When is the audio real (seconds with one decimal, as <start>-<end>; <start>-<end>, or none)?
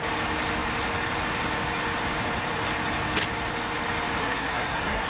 0.0-4.2